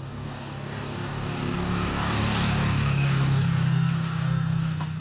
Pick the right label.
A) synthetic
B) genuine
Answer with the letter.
A